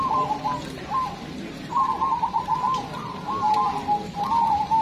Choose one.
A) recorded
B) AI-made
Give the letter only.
A